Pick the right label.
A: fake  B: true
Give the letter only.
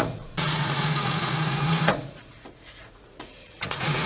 A